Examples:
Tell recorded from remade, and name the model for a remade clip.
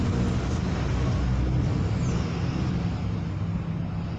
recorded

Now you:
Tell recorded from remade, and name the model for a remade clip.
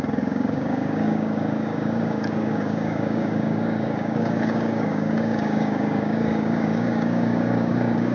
remade, codec, DAC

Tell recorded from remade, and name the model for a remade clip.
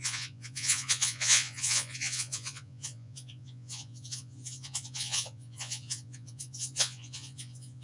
remade, vocoder, Vocos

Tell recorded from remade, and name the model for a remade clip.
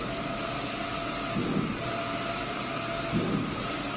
recorded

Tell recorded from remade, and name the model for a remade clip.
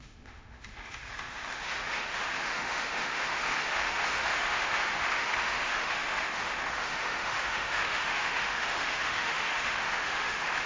remade, autoencoder, DAC-VAE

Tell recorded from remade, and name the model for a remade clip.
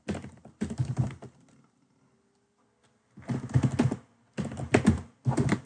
recorded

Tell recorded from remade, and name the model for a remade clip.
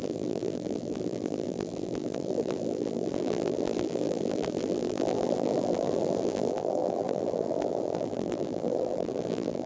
remade, vocoder, BigVGAN v2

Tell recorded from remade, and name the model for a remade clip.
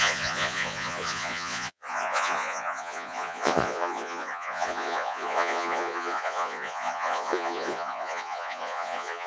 remade, vocoder, Vocos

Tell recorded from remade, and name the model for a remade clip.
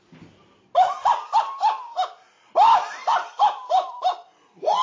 recorded